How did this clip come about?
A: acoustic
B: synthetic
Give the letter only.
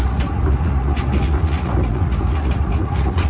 B